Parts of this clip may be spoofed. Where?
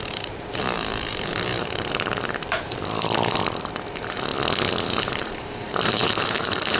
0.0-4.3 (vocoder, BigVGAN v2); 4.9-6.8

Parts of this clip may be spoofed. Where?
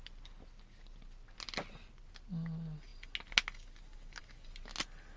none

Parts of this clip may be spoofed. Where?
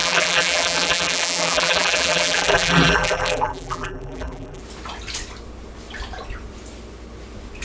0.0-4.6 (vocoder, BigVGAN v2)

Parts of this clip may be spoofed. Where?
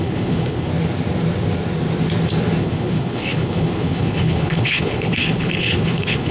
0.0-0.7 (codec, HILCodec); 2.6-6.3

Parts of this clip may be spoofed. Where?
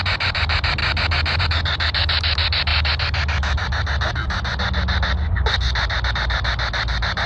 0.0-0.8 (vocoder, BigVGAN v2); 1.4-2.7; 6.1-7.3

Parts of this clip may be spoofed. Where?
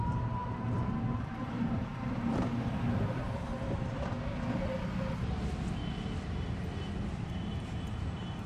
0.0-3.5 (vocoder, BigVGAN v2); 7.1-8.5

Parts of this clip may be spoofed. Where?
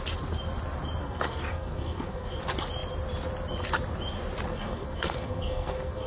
1.0-2.4 (codec, SNAC); 4.5-6.1